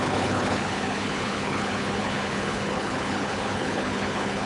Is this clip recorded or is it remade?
remade